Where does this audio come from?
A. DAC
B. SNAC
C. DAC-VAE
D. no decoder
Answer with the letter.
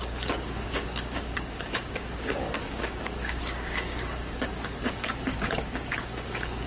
A